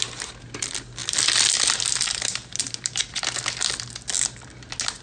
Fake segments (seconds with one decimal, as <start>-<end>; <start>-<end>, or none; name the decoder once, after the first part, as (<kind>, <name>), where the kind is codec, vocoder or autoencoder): none

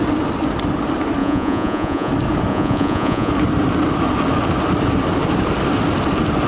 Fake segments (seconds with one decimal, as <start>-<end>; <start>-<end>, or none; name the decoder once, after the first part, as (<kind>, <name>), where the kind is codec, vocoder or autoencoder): 1.2-2.1 (vocoder, Vocos); 2.5-3.3

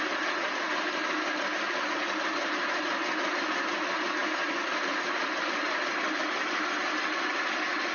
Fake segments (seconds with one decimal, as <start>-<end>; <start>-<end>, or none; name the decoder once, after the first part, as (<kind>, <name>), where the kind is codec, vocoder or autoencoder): none

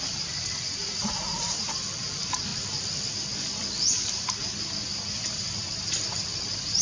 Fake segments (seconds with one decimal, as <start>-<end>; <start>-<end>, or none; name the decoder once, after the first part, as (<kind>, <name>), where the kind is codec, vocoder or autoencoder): none

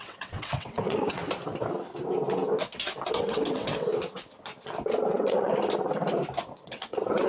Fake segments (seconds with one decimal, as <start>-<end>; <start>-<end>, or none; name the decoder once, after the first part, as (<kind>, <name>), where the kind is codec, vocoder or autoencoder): 0.0-1.2 (vocoder, WaveNeXt); 3.1-3.9; 5.1-5.5; 6.5-7.3

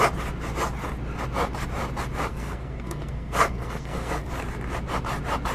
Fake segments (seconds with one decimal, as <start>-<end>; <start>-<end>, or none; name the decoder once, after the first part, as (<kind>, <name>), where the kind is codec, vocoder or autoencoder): 2.3-4.3 (codec, SNAC)

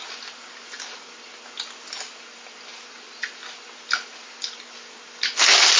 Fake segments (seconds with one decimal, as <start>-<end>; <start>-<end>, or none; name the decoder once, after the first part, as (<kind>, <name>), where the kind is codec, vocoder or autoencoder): none

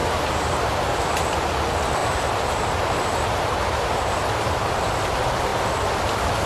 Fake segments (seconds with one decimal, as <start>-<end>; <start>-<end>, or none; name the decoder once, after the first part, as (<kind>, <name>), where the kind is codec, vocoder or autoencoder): 0.0-1.0 (vocoder, BigVGAN v2); 2.0-4.5